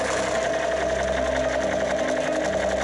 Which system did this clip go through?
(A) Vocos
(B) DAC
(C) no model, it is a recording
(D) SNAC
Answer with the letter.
C